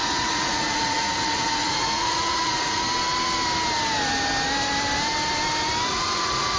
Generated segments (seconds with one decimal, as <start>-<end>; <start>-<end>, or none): 0.0-2.8; 5.9-6.6